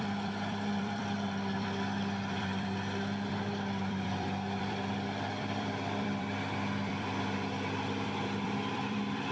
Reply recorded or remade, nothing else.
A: remade